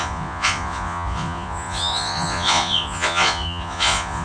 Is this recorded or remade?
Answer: remade